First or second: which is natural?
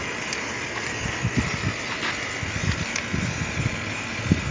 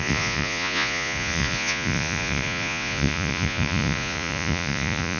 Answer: first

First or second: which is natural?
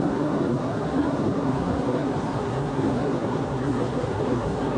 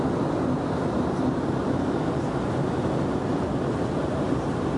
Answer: second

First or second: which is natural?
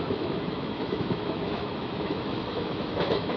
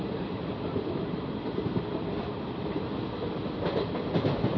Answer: second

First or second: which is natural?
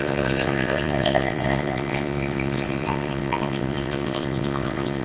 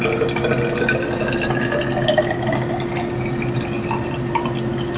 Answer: second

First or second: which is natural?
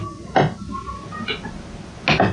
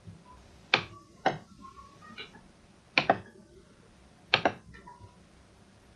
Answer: first